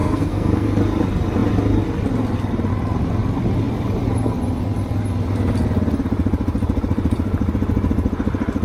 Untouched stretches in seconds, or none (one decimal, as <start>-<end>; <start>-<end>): 0.8-8.6